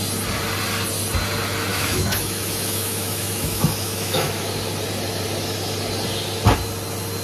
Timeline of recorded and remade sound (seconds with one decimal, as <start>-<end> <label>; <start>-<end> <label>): 0.0-1.7 recorded; 1.7-4.5 remade; 4.5-7.2 recorded